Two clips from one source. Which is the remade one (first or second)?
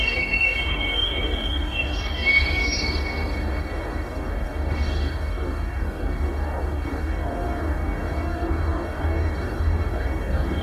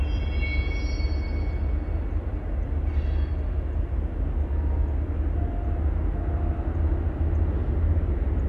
first